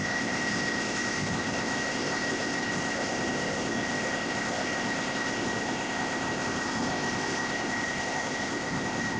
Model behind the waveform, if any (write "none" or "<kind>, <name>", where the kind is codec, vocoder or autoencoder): codec, ZipCodec